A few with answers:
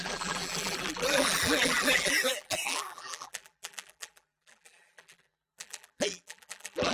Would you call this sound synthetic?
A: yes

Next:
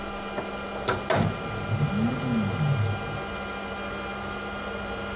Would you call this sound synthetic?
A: no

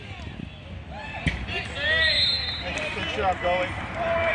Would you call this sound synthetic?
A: no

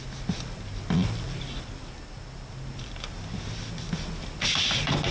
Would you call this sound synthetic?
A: no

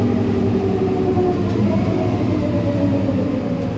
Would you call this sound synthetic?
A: no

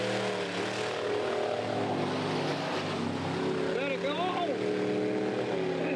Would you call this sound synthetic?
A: no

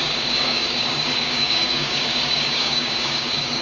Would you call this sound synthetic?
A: yes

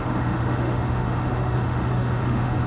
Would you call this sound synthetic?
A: yes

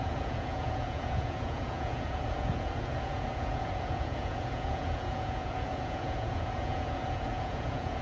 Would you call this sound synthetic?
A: yes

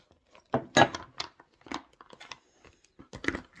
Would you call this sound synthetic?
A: no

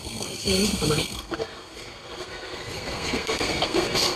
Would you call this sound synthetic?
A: yes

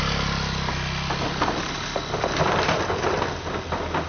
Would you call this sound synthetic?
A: no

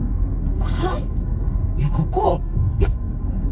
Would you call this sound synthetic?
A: yes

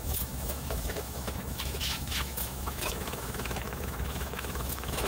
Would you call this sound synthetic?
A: yes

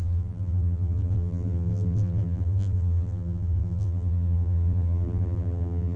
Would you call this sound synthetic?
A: yes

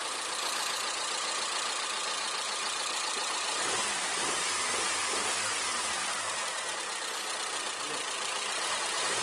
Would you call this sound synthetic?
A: no